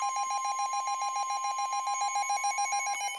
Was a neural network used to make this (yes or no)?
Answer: no